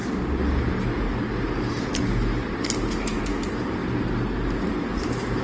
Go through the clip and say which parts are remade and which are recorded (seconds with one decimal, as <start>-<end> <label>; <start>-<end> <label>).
0.0-5.4 recorded